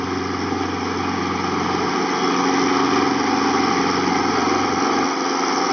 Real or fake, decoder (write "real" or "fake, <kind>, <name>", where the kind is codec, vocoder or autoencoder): real